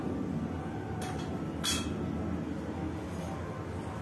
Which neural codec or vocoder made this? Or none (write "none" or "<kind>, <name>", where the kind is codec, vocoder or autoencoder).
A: none